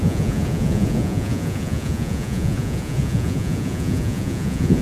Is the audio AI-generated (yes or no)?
yes